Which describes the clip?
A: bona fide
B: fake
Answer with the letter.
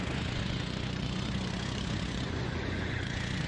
B